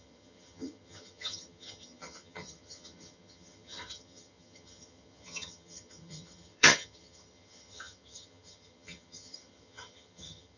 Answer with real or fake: fake